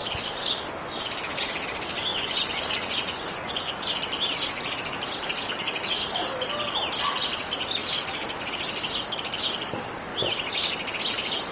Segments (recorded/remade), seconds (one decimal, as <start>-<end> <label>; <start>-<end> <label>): 0.0-2.1 recorded; 2.1-3.7 remade; 3.7-11.5 recorded